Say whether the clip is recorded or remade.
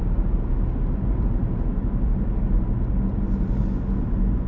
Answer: recorded